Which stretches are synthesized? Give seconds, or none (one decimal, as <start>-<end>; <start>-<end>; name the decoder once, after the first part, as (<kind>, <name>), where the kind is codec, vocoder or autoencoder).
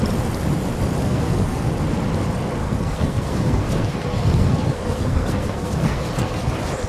1.0-1.7 (codec, SNAC); 2.6-6.5